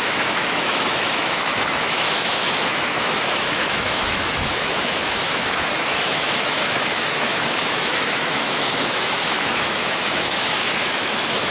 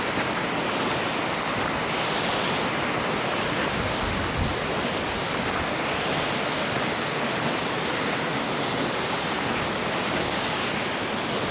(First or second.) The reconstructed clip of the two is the first